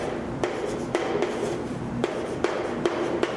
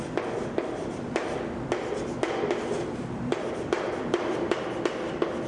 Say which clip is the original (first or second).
first